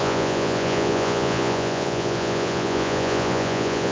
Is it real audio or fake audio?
fake